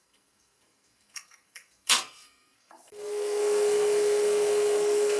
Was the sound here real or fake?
fake